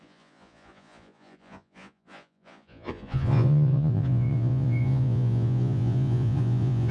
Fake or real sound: fake